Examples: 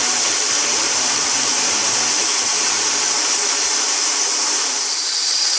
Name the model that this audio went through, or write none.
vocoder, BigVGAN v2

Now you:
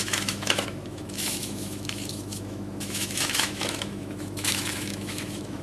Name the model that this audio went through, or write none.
autoencoder, DAC-VAE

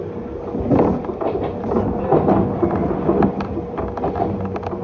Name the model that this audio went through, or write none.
none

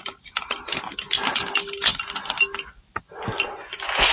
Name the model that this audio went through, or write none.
none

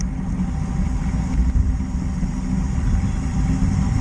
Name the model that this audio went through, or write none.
none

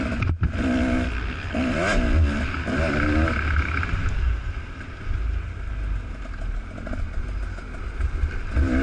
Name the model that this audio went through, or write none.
none